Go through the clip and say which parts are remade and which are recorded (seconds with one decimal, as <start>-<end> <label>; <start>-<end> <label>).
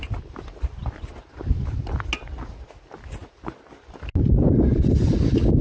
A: 0.0-5.6 recorded